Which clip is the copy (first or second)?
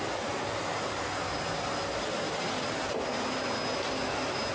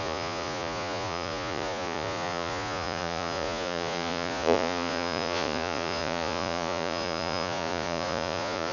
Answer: second